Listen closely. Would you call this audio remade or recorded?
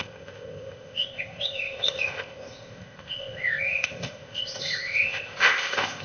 remade